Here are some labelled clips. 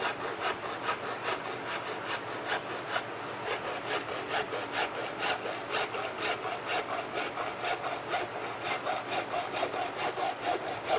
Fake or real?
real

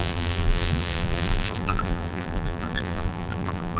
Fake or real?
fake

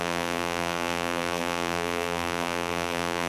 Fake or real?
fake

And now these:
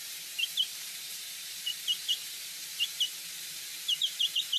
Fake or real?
fake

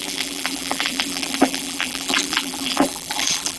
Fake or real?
fake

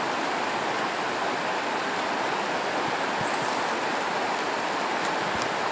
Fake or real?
real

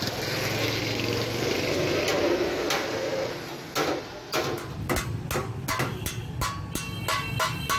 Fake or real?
real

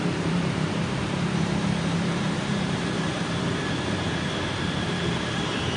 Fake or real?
fake